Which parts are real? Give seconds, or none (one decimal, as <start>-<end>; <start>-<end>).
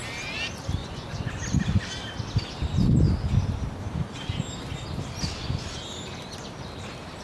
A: 0.0-0.8; 1.4-7.2